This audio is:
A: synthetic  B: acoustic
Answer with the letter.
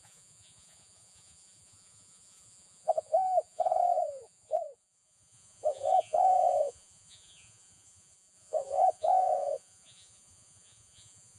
A